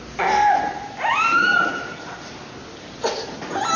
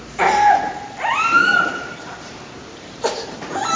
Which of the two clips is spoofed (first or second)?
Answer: second